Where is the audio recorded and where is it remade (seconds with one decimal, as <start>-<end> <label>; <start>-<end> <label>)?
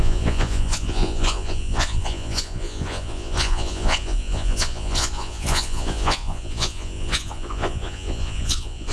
0.0-8.9 remade